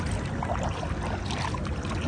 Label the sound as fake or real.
real